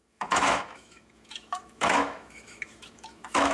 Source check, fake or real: fake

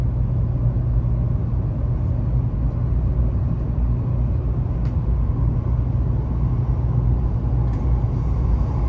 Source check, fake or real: real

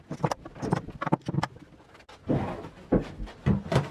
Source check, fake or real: real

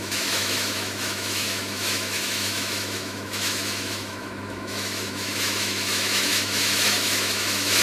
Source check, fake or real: fake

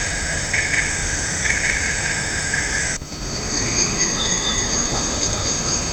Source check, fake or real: fake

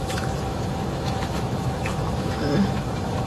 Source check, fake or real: fake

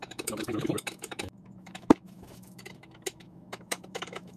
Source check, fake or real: fake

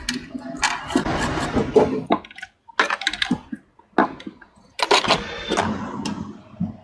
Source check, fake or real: real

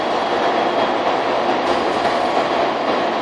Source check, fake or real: real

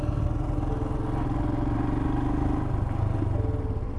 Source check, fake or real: real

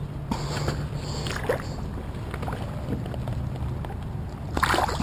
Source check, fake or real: real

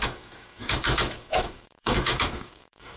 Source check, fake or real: fake